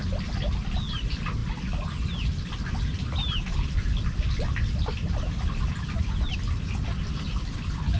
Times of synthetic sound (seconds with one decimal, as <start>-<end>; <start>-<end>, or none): none

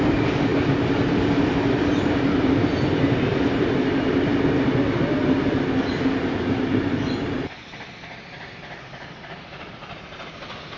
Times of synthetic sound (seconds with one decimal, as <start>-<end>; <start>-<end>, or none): none